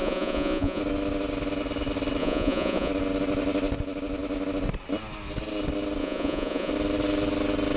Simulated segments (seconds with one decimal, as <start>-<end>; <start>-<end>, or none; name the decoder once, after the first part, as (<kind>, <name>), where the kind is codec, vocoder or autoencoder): 0.0-0.8 (vocoder, Vocos); 2.2-2.9; 6.0-6.7